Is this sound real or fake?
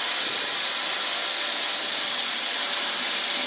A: real